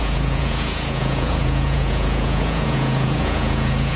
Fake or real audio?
fake